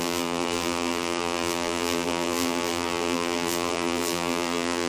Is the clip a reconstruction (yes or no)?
yes